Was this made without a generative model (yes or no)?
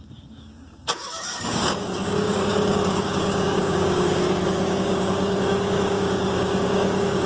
no